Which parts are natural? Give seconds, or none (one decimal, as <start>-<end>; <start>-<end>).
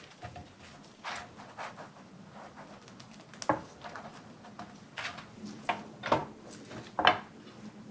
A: 0.0-7.9